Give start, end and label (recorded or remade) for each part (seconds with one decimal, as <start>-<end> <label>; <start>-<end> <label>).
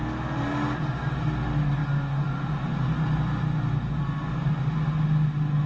0.0-5.7 recorded